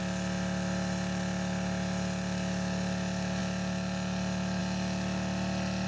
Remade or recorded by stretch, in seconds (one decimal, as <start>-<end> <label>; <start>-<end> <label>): 0.0-5.9 recorded